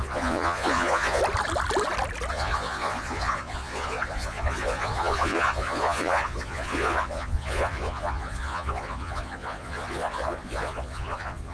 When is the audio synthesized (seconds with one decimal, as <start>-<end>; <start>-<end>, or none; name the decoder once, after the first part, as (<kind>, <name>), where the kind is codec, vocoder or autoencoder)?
0.0-1.2 (vocoder, Vocos); 2.3-11.5